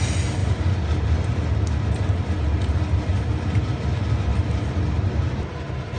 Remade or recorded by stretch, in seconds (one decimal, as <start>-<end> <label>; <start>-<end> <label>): 0.0-0.4 recorded; 0.4-1.5 remade; 1.5-4.3 recorded; 4.3-4.8 remade; 4.8-6.0 recorded